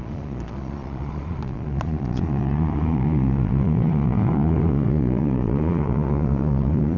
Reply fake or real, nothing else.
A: fake